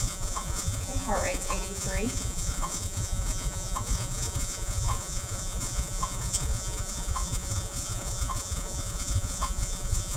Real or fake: fake